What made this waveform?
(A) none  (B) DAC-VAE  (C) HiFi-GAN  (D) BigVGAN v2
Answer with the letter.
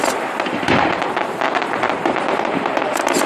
D